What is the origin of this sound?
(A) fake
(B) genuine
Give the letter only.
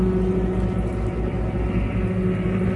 B